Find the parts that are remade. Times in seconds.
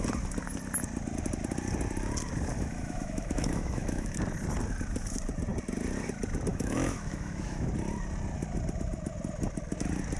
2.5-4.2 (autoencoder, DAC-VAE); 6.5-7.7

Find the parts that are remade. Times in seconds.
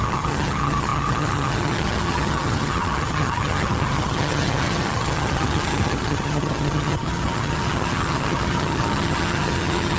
0.0-10.0 (vocoder, HiFi-GAN)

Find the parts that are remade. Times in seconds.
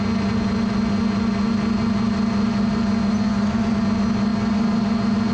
none